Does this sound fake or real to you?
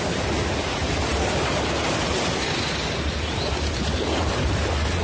real